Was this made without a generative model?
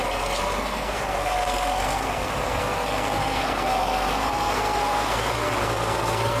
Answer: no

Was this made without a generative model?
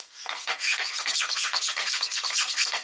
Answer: no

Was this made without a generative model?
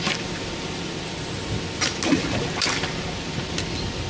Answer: yes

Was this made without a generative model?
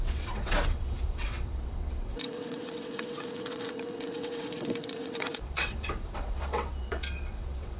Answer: no